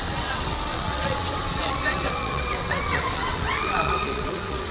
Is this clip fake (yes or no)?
yes